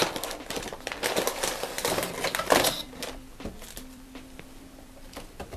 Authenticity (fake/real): fake